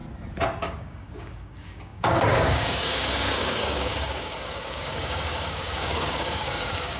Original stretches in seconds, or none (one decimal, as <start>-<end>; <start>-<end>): 0.0-0.6